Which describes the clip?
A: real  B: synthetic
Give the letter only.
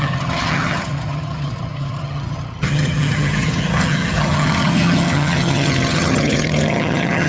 B